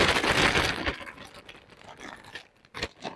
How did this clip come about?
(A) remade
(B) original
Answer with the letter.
A